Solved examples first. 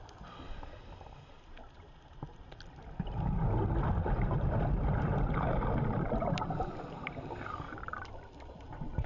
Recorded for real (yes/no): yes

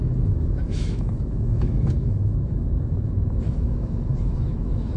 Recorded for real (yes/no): no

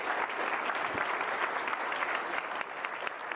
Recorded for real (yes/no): yes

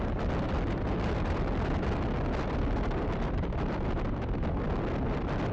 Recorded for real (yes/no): yes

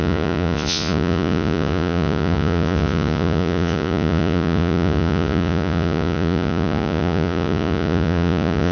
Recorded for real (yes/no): no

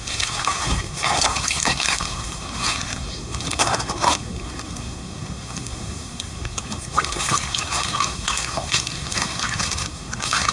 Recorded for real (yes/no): no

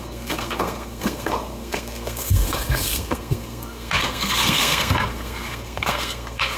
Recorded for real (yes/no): no